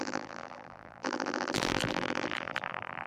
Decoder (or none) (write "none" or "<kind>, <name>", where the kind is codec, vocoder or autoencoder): vocoder, BigVGAN v2